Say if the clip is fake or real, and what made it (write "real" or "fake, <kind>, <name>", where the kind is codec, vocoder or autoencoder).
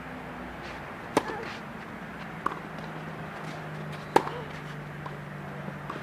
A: real